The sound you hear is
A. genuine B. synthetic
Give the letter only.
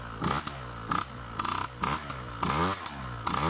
A